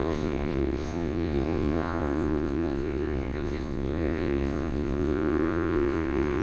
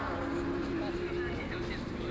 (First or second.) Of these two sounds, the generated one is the first